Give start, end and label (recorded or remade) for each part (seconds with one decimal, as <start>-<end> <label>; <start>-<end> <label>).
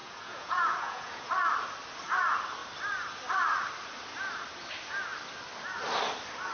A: 0.0-1.3 remade; 1.3-6.5 recorded